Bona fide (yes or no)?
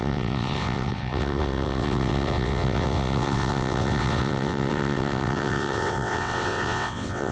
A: no